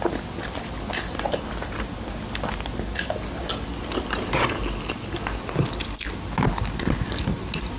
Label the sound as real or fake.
real